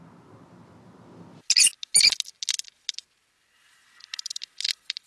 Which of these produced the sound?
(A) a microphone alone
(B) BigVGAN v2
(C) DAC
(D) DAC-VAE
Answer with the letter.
A